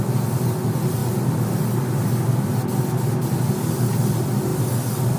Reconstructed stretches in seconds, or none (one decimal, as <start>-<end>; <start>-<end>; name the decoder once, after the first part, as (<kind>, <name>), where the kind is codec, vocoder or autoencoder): none

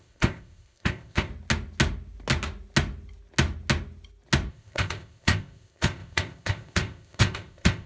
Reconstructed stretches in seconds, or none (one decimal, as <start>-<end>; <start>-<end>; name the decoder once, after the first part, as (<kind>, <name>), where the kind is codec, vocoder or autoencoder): 0.0-1.3 (codec, ZipCodec); 4.5-7.9

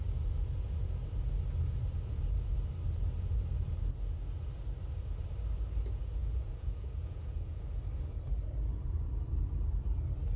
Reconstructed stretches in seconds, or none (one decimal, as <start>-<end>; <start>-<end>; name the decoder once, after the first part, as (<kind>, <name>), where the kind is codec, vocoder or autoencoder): 6.2-7.6 (vocoder, Vocos)

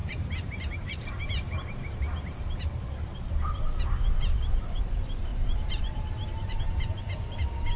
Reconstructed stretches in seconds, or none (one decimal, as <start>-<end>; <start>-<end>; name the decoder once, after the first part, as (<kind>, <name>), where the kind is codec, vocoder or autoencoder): 0.0-2.5 (vocoder, BigVGAN v2); 5.3-7.0

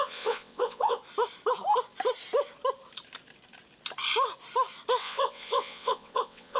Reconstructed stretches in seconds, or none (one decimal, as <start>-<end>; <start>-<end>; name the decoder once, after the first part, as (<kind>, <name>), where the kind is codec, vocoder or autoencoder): 0.0-1.0 (vocoder, WaveNeXt); 5.0-6.6

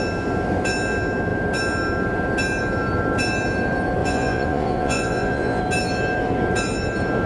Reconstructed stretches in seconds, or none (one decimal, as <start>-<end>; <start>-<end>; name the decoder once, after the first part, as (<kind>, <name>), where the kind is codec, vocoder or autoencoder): 4.0-5.6 (vocoder, Vocos)

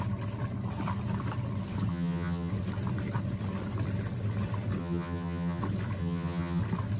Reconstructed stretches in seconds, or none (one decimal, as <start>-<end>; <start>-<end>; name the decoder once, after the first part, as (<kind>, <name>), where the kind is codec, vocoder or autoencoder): 1.9-2.5 (vocoder, HiFi-GAN); 4.8-5.6; 6.0-6.6

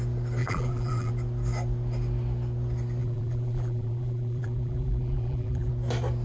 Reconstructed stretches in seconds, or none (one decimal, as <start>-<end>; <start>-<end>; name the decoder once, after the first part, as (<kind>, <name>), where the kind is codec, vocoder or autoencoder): 0.4-1.1 (vocoder, BigVGAN v2); 3.0-5.7